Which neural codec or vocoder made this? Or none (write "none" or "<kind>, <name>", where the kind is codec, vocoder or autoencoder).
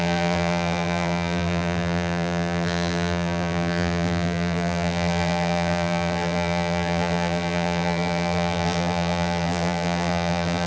vocoder, BigVGAN v2